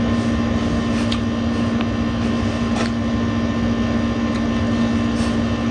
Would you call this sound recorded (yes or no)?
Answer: yes